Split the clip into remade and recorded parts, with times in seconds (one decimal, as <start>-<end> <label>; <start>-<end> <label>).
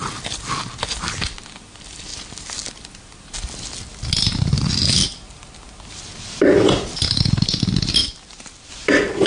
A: 0.0-9.3 recorded